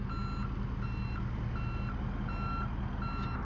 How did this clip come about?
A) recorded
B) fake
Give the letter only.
A